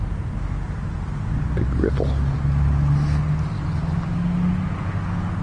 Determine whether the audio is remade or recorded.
recorded